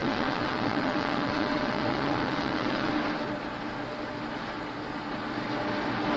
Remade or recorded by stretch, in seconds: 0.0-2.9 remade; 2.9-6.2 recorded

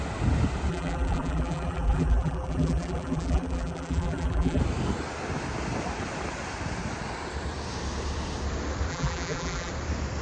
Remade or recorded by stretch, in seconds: 0.0-0.7 recorded; 0.7-4.6 remade; 4.6-8.9 recorded; 8.9-9.7 remade; 9.7-10.2 recorded

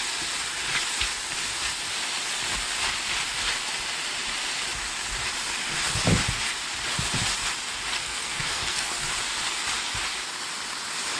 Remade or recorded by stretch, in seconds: 0.0-8.0 recorded; 8.0-8.9 remade; 8.9-11.2 recorded

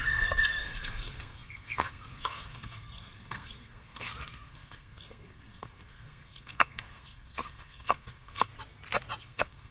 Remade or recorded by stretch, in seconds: 0.0-8.5 remade; 8.5-9.2 recorded; 9.2-9.7 remade

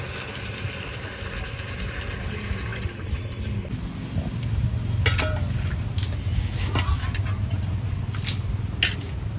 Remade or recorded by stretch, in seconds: 0.0-9.4 recorded

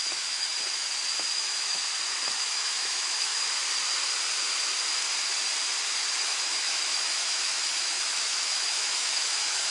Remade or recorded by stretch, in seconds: 0.0-0.5 remade; 0.5-1.3 recorded; 1.3-1.8 remade; 1.8-2.4 recorded; 2.4-3.3 remade; 3.3-6.2 recorded; 6.2-9.7 remade

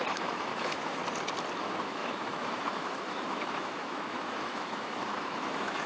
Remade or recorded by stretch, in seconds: 0.0-1.0 remade; 1.0-1.6 recorded; 1.6-5.9 remade

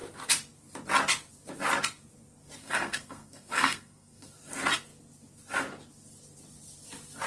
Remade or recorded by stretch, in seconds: 0.0-2.6 recorded; 2.6-4.3 remade; 4.3-7.3 recorded